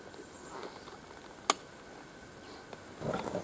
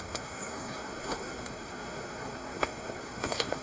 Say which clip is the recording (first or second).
first